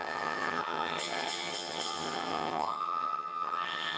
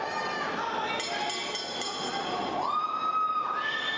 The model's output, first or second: first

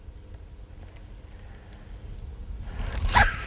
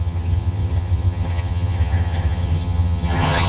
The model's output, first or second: second